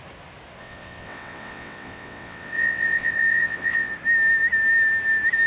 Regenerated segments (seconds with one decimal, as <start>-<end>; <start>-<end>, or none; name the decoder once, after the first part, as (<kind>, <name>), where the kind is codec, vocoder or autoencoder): 0.6-3.9 (vocoder, WaveNeXt)